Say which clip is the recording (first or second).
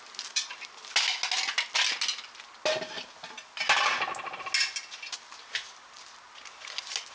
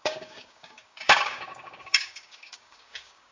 first